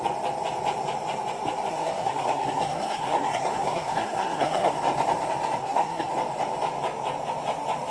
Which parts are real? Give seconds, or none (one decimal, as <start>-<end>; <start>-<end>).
0.0-1.7; 4.7-5.6; 6.1-7.9